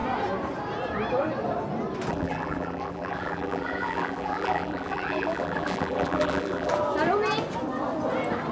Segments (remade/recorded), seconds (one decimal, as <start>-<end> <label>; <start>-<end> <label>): 0.0-2.1 recorded; 2.1-6.7 remade; 6.7-8.5 recorded